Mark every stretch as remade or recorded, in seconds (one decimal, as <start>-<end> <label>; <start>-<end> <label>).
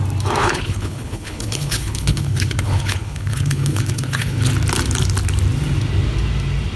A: 0.0-0.4 recorded; 0.4-4.5 remade; 4.5-6.8 recorded